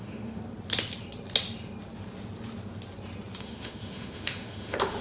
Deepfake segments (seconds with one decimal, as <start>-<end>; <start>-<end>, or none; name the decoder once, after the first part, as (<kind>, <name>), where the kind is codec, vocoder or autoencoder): 0.0-0.4 (autoencoder, DAC-VAE); 3.4-5.0